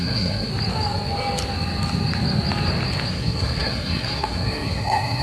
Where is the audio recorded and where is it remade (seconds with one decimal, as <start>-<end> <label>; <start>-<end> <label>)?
0.0-0.5 remade; 0.5-3.1 recorded; 3.1-5.2 remade